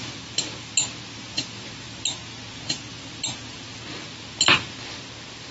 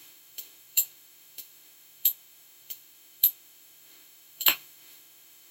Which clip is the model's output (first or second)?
second